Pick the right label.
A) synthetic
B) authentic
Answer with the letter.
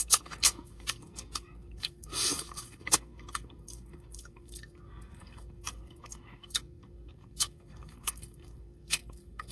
A